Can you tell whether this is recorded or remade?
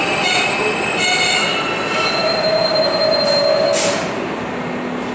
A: recorded